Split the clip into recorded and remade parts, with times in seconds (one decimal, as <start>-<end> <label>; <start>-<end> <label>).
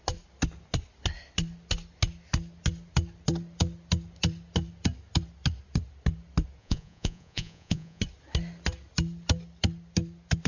0.0-6.6 recorded; 6.6-8.0 remade; 8.0-10.5 recorded